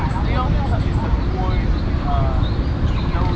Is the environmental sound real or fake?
real